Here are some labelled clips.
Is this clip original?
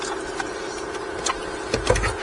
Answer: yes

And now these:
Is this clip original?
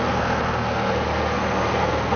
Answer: no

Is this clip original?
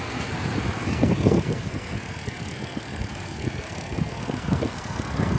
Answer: no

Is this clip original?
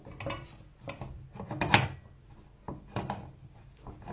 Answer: yes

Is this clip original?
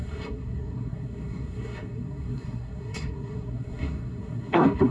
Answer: no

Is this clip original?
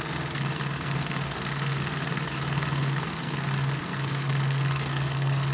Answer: no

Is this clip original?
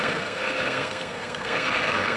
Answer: no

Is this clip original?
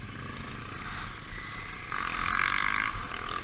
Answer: yes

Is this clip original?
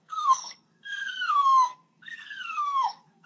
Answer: no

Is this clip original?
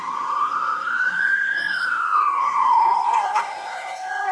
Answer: no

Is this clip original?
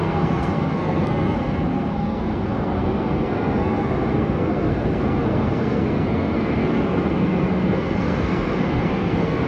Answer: no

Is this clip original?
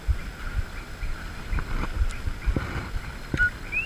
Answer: yes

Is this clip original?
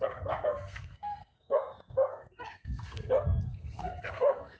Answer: no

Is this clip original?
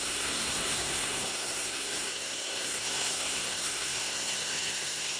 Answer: no